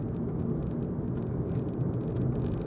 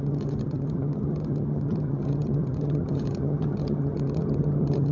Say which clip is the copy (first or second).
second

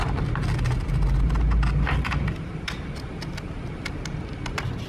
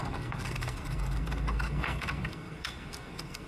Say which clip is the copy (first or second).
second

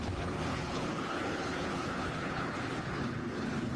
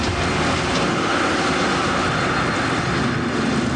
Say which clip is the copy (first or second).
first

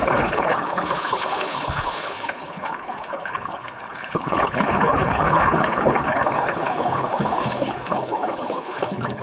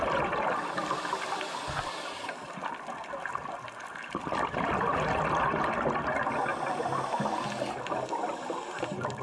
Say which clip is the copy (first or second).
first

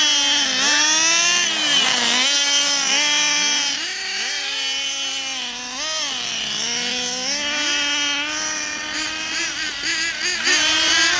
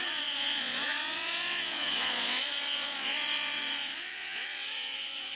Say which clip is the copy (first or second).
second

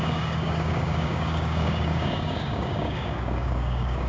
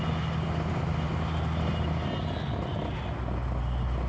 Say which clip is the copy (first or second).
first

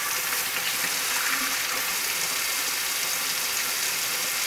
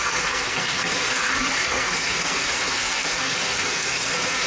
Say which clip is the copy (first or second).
second